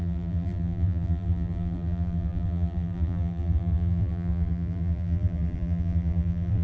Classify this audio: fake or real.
fake